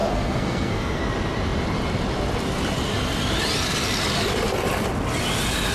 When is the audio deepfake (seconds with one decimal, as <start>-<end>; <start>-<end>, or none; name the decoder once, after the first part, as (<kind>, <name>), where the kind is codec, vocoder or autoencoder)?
0.0-1.0 (codec, SNAC)